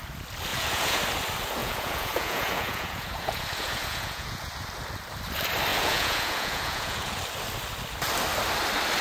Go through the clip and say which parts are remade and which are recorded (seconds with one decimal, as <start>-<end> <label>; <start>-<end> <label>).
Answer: 0.0-0.5 recorded; 0.5-1.0 remade; 1.0-1.6 recorded; 1.6-4.5 remade; 4.5-5.7 recorded; 5.7-7.2 remade; 7.2-9.0 recorded